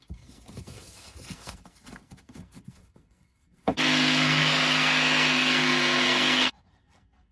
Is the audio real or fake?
fake